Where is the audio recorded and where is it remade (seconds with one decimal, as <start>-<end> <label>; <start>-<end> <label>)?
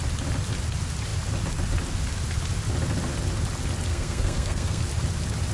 0.0-3.9 recorded; 3.9-4.8 remade; 4.8-5.5 recorded